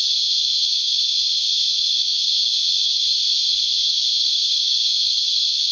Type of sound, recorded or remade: remade